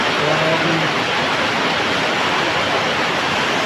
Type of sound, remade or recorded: recorded